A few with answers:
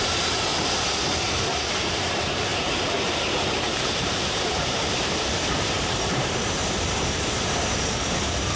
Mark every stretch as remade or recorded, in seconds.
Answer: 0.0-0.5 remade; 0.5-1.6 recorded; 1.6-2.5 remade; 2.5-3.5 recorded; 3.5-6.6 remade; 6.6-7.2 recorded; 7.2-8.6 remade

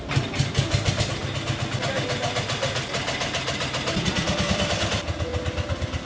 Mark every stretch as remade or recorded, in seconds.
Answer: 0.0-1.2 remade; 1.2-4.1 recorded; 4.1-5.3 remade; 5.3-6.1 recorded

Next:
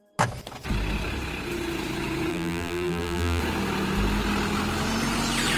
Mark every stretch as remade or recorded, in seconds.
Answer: 0.0-2.3 recorded; 2.3-3.4 remade; 3.4-5.6 recorded

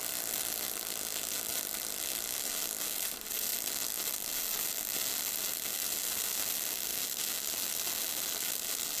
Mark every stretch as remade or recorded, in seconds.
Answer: 0.0-9.0 recorded